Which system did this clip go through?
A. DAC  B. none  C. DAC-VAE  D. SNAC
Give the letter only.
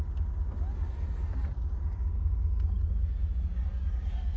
B